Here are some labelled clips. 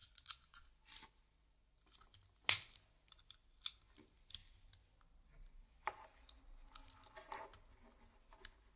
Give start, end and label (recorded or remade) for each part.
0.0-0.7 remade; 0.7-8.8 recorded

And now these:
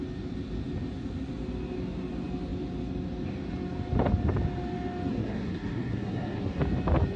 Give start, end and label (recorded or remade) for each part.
0.0-5.1 recorded; 5.1-6.6 remade; 6.6-7.2 recorded

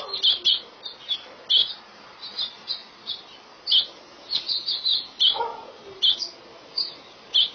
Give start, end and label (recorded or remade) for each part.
0.0-1.6 recorded; 1.6-4.1 remade; 4.1-4.9 recorded; 4.9-6.0 remade; 6.0-7.5 recorded

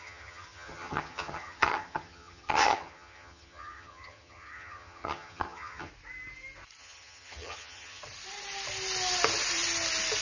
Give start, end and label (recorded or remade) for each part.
0.0-5.9 remade; 5.9-6.8 recorded; 6.8-8.0 remade; 8.0-10.2 recorded

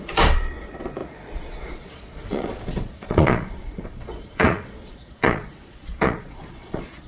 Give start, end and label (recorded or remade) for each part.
0.0-7.1 remade

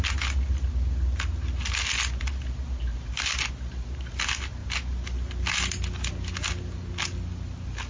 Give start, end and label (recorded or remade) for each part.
0.0-7.9 recorded

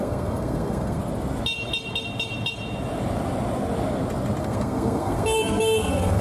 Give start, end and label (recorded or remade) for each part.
0.0-1.0 remade; 1.0-4.4 recorded; 4.4-6.2 remade

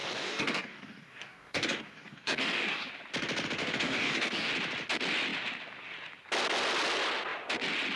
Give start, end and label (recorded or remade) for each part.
0.0-2.9 remade; 2.9-3.6 recorded; 3.6-4.5 remade; 4.5-8.0 recorded